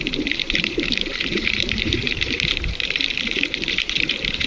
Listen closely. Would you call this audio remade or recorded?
remade